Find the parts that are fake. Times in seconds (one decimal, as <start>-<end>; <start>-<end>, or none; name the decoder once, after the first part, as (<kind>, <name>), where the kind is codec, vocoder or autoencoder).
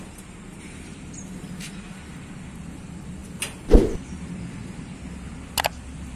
0.0-3.2 (vocoder, BigVGAN v2); 5.6-6.2